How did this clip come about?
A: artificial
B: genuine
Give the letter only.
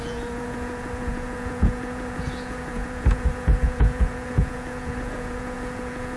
A